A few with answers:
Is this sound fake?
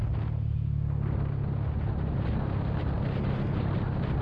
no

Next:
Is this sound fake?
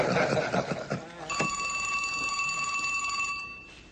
no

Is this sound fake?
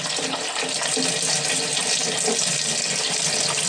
no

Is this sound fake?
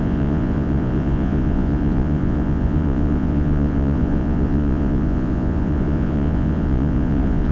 yes